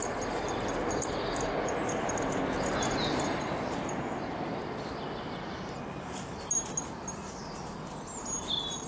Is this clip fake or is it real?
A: real